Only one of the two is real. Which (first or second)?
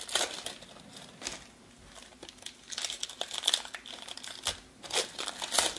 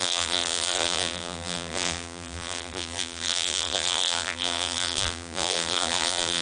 first